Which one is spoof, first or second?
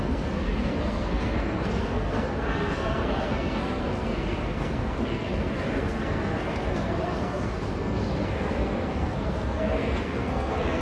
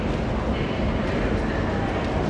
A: first